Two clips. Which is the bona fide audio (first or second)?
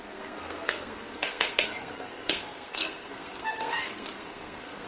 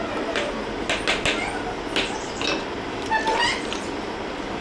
second